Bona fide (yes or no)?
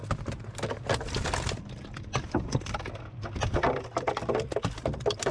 yes